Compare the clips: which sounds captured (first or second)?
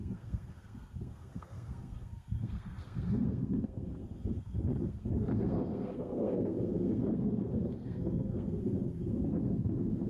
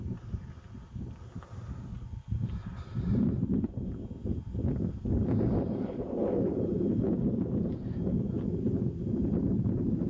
second